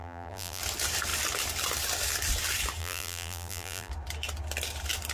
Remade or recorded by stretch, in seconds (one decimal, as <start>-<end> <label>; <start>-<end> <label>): 0.0-0.6 remade; 0.6-2.8 recorded; 2.8-3.9 remade; 3.9-5.1 recorded